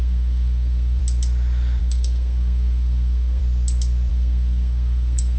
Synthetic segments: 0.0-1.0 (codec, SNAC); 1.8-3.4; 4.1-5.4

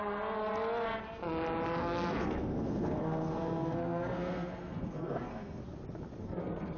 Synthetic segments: 1.8-5.6 (codec, SNAC); 6.2-6.8

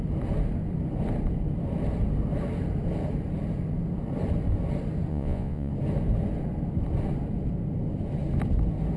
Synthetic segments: 5.1-5.7 (vocoder, Vocos)

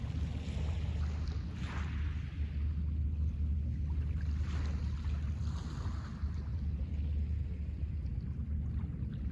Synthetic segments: none